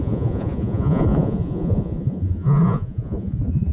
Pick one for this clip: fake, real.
fake